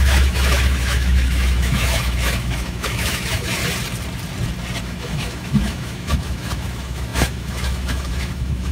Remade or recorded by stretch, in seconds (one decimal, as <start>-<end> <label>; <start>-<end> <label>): 0.0-3.6 remade; 3.6-4.8 recorded; 4.8-8.7 remade